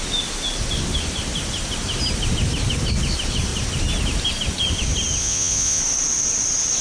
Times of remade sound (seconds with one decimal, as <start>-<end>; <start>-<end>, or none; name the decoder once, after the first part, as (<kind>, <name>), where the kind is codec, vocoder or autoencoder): 5.2-5.8 (vocoder, Vocos)